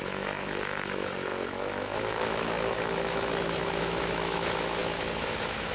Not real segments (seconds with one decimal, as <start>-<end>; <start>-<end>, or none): 0.0-5.7